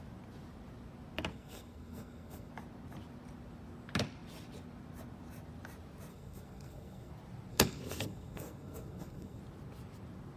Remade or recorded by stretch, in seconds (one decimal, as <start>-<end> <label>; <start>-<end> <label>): 0.0-1.3 recorded; 1.3-2.5 remade; 2.5-6.1 recorded; 6.1-7.1 remade; 7.1-7.5 recorded; 7.5-9.4 remade; 9.4-10.4 recorded